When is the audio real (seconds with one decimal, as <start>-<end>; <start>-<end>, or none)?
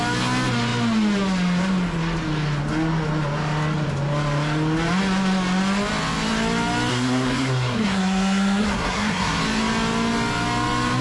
0.0-6.9; 9.4-11.0